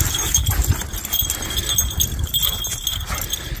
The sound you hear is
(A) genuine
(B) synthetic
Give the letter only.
A